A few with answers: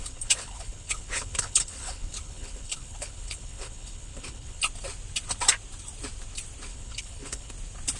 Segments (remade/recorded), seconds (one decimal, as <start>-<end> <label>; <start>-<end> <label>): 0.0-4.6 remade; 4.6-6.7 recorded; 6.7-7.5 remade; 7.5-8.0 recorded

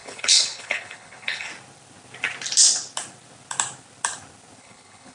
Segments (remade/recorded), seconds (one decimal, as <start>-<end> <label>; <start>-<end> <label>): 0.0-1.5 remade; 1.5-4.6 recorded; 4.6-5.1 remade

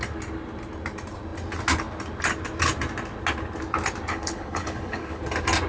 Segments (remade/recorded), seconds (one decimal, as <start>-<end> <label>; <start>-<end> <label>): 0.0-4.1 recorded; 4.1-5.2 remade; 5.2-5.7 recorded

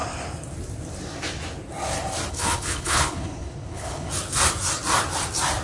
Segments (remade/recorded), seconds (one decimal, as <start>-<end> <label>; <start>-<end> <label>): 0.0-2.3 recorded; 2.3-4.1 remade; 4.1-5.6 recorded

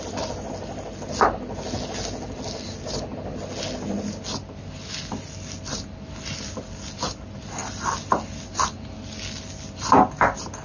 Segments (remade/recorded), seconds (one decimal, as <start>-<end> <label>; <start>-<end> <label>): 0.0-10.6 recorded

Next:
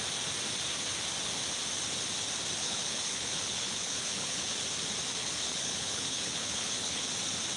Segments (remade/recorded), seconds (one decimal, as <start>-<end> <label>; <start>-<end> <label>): 0.0-2.6 recorded; 2.6-4.5 remade; 4.5-5.2 recorded; 5.2-7.0 remade; 7.0-7.6 recorded

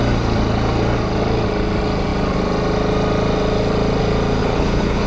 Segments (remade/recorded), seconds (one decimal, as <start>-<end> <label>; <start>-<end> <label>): 0.0-4.4 recorded; 4.4-5.1 remade